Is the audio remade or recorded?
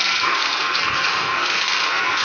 remade